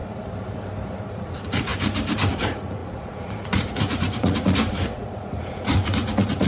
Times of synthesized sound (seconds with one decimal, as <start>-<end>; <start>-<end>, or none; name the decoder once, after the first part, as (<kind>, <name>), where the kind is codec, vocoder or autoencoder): 1.1-1.7 (vocoder, Vocos); 2.3-6.5